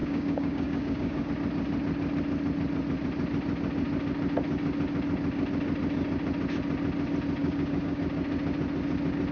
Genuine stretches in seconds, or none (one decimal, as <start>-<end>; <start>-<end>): 1.3-7.4; 8.0-9.3